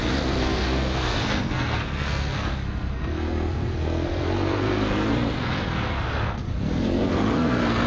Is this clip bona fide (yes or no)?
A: no